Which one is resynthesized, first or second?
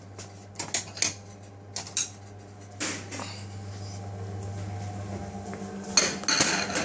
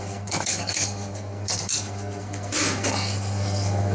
second